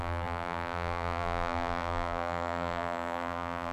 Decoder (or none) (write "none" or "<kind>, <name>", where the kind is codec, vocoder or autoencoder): vocoder, BigVGAN v2